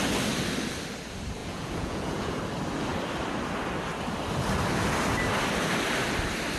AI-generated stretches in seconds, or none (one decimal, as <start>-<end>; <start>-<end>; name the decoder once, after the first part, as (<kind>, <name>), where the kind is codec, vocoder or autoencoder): 1.4-2.4 (vocoder, Vocos)